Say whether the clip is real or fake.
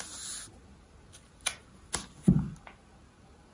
real